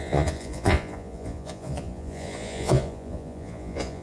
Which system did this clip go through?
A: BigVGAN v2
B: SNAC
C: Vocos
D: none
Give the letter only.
C